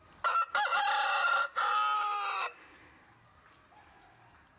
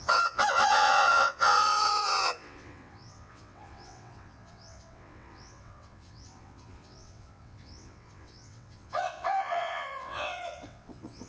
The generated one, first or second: second